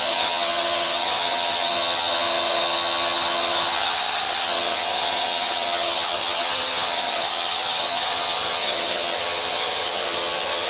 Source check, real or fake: fake